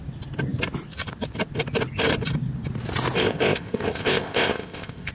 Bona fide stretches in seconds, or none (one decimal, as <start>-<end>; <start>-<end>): 0.0-3.2

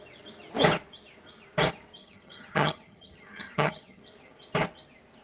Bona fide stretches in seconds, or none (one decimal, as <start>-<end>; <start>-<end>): 0.0-2.0; 4.0-5.2

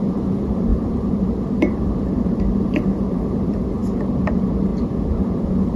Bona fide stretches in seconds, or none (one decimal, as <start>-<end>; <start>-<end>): 3.8-4.3; 4.7-5.2

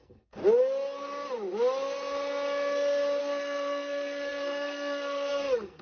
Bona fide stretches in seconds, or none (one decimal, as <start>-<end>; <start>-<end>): 0.4-3.2

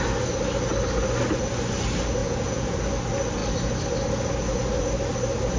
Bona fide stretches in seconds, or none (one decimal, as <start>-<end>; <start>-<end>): 0.0-2.2; 2.8-5.6

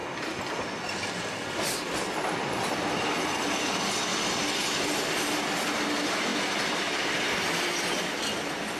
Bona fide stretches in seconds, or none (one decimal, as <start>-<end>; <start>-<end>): 0.0-8.8